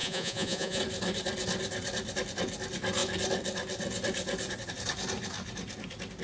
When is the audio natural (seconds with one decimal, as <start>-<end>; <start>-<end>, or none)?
0.8-6.2